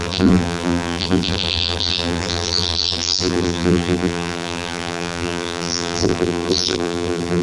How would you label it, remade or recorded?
remade